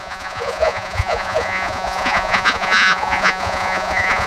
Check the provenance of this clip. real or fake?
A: fake